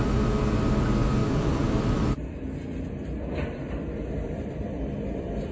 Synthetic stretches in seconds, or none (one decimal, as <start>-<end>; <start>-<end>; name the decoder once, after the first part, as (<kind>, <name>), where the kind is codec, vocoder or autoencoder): 1.2-4.5 (vocoder, BigVGAN v2)